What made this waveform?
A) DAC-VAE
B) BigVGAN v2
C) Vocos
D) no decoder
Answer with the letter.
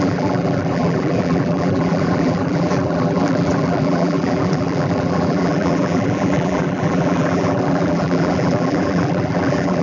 B